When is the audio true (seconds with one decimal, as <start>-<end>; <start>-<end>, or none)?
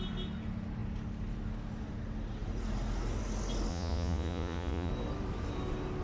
0.0-3.7; 4.9-6.0